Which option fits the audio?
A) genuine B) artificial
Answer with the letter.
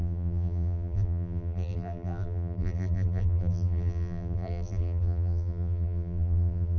B